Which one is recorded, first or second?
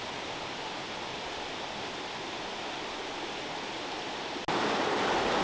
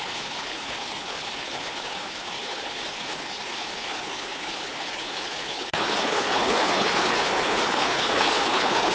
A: first